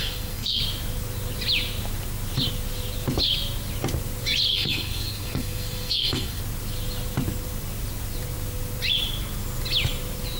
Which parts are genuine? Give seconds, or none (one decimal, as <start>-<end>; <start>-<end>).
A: 0.6-4.5; 6.4-10.4